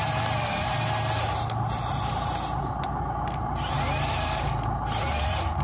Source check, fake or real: real